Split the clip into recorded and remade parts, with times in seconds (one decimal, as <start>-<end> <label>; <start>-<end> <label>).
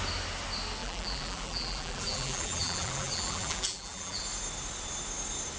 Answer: 0.0-0.8 recorded; 0.8-4.2 remade; 4.2-5.6 recorded